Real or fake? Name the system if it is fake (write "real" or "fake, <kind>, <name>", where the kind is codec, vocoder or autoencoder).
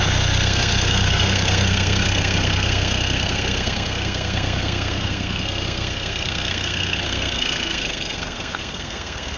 fake, codec, SNAC